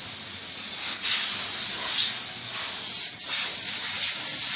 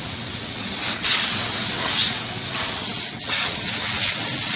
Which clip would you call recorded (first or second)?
first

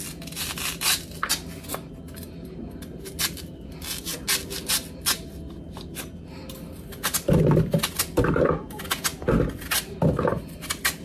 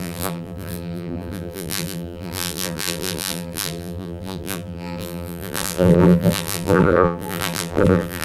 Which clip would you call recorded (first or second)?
first